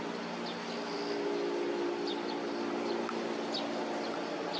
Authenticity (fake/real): real